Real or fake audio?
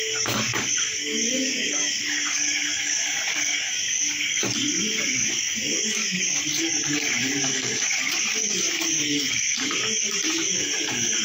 fake